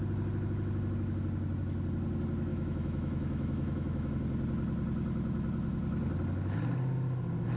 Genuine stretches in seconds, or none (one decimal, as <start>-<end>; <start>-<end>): 0.0-2.5; 4.1-7.6